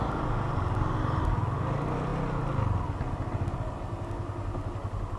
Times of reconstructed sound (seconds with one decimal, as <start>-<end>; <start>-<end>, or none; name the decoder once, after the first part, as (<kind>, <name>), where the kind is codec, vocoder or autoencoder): none

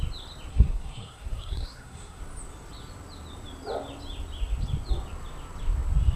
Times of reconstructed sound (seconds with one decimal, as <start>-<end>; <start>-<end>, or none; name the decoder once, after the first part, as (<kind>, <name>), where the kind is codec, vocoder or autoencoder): 0.5-2.2 (codec, SNAC)

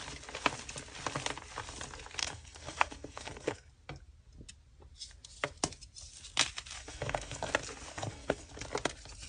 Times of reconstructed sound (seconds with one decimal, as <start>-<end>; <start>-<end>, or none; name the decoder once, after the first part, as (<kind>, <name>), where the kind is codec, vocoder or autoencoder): 2.2-3.7 (codec, SNAC); 6.8-7.5; 7.9-8.5

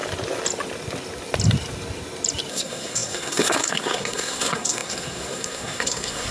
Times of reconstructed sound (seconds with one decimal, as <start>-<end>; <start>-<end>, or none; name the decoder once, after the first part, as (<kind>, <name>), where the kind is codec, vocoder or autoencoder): 2.5-6.3 (codec, SNAC)

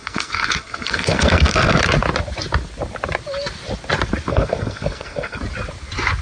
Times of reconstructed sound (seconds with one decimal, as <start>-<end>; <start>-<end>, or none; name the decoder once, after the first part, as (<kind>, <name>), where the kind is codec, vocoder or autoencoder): 0.0-1.8 (codec, SNAC); 4.3-5.4

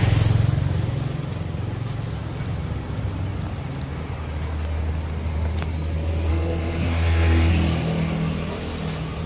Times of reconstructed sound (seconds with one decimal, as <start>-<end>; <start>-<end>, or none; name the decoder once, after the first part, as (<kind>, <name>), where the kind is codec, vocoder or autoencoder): 6.3-7.5 (codec, SNAC)

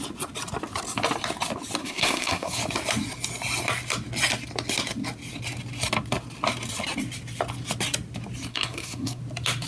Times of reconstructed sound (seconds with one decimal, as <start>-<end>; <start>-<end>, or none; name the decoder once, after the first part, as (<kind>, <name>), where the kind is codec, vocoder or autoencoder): 1.8-2.6 (codec, SNAC); 8.5-9.2

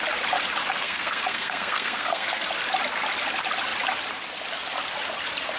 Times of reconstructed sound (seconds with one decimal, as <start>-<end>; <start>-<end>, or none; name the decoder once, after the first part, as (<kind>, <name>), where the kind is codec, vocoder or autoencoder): 0.7-2.4 (codec, SNAC)